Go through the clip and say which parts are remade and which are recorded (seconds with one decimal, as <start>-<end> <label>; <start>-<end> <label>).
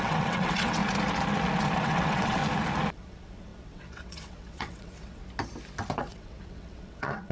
0.0-0.8 remade; 0.8-1.8 recorded; 1.8-2.4 remade; 2.4-2.9 recorded; 2.9-5.2 remade; 5.2-6.0 recorded; 6.0-7.3 remade